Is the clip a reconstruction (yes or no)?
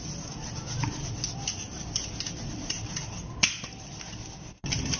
no